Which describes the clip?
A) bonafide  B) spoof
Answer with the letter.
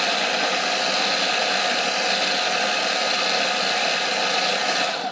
A